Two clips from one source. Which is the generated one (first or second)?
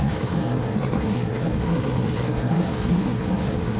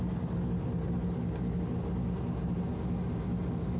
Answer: first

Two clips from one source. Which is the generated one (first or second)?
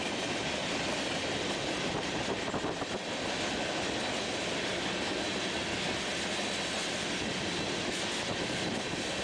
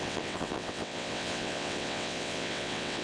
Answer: second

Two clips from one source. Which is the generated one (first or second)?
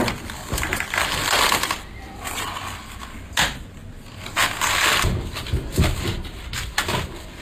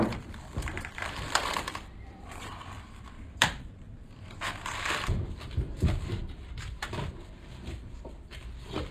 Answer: second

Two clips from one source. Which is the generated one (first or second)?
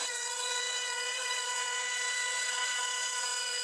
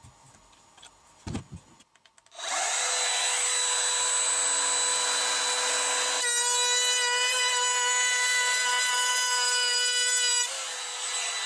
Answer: first